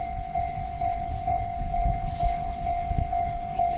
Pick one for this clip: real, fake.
fake